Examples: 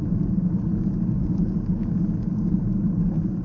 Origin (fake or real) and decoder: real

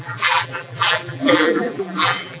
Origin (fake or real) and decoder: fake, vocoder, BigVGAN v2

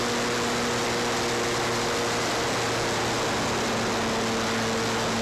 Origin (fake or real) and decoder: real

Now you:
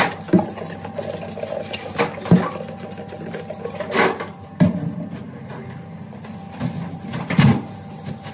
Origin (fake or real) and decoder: real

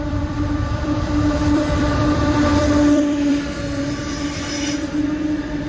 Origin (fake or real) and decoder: fake, vocoder, BigVGAN v2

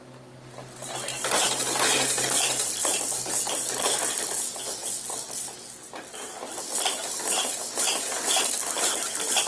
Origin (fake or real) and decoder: real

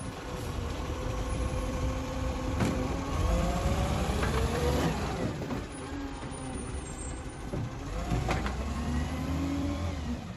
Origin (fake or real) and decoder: fake, vocoder, BigVGAN v2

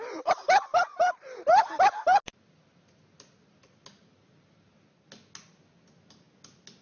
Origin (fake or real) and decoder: real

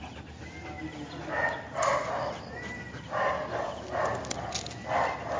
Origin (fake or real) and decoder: real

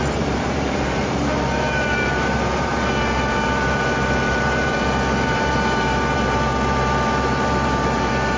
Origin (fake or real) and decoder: fake, vocoder, BigVGAN v2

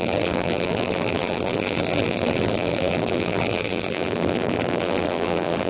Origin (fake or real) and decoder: fake, vocoder, BigVGAN v2